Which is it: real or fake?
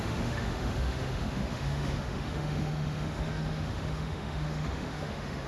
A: fake